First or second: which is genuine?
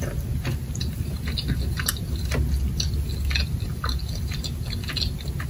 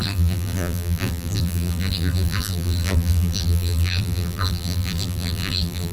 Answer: first